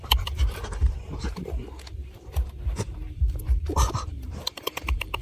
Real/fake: fake